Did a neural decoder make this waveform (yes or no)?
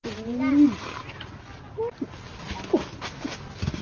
no